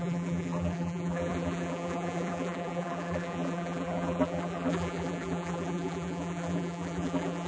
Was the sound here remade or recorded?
remade